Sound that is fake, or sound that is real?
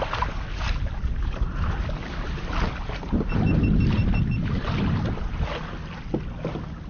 real